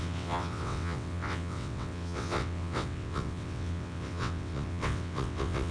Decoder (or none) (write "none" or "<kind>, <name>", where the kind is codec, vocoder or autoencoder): vocoder, WaveNeXt